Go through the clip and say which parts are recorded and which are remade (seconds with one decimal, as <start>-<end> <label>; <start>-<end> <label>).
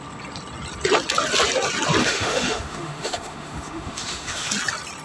0.0-2.0 recorded; 2.0-4.5 remade; 4.5-5.0 recorded